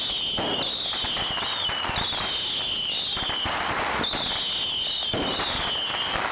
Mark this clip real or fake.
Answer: real